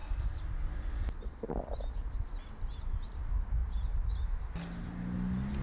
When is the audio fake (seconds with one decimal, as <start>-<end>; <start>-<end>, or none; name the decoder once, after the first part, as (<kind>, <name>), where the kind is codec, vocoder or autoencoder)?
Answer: none